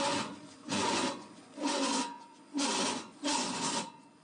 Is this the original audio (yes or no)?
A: no